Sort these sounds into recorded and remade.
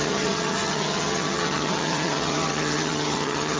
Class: remade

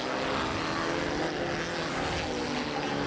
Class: recorded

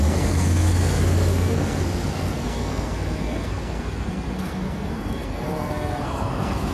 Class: remade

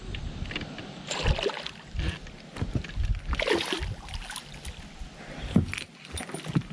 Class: recorded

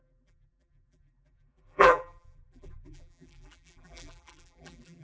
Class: remade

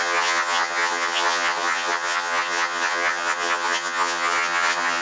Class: remade